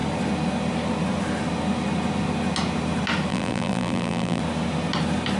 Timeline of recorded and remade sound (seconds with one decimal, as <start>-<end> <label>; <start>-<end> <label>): 0.0-3.3 recorded; 3.3-4.4 remade; 4.4-5.4 recorded

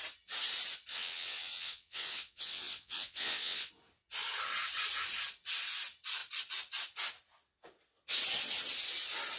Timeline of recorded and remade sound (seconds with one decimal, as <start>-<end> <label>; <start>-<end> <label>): 0.0-0.9 recorded; 0.9-3.7 remade; 3.7-9.4 recorded

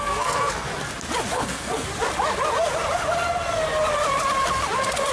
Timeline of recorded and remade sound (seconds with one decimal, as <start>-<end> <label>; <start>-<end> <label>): 0.0-0.7 remade; 0.7-1.3 recorded; 1.3-1.9 remade; 1.9-5.1 recorded

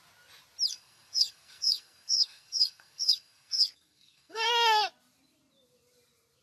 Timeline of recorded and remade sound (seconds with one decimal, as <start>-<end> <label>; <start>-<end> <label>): 0.0-0.7 recorded; 0.7-4.5 remade; 4.5-6.4 recorded

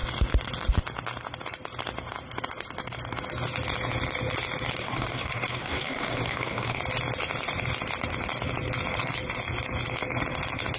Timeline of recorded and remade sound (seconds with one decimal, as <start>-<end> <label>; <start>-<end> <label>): 0.0-4.8 recorded; 4.8-6.8 remade; 6.8-10.8 recorded

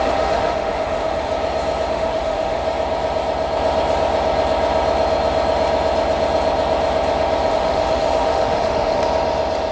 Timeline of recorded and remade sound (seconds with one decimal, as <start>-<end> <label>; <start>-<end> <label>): 0.0-1.3 remade; 1.3-1.9 recorded; 1.9-2.6 remade; 2.6-7.5 recorded; 7.5-9.0 remade; 9.0-9.7 recorded

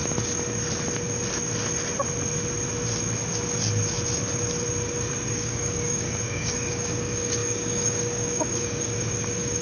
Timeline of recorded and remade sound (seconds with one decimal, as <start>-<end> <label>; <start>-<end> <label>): 0.0-5.3 recorded; 5.3-9.6 remade